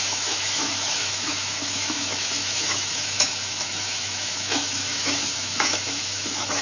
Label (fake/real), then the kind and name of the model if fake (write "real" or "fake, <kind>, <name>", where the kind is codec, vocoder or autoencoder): fake, autoencoder, DAC-VAE